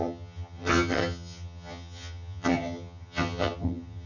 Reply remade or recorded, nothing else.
remade